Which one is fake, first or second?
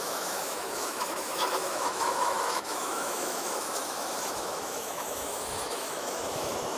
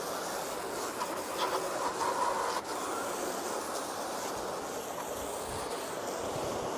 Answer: first